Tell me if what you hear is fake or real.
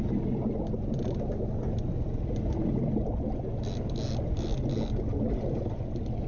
real